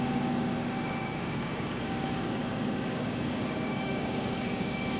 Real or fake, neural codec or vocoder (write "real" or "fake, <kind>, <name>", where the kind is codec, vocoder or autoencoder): fake, codec, DAC